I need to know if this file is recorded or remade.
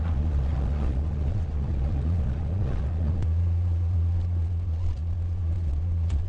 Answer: remade